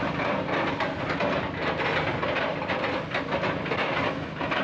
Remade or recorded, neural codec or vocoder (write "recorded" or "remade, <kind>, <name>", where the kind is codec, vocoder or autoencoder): recorded